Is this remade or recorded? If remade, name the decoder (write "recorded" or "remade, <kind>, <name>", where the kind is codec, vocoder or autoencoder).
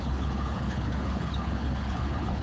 remade, codec, HILCodec